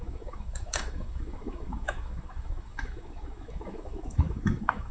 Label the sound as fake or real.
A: fake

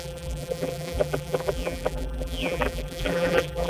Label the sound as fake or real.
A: fake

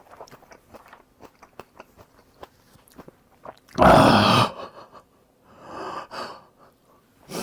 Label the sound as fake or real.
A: fake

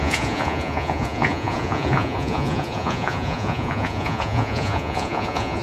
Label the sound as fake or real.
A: fake